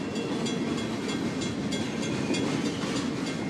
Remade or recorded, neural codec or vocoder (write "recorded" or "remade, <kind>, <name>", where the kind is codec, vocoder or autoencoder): recorded